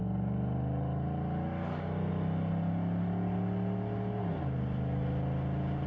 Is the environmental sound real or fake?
real